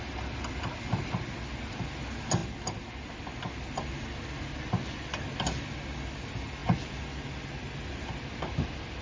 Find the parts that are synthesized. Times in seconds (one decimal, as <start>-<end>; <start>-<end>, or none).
none